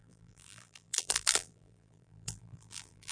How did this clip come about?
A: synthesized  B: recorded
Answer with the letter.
A